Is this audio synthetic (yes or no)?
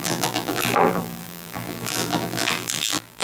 yes